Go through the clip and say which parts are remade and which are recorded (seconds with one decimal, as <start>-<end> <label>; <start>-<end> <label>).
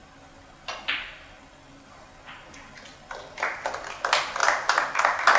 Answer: 0.0-5.4 recorded